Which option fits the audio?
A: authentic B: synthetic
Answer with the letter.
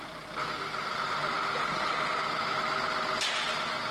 A